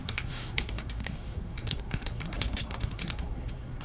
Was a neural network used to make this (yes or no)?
yes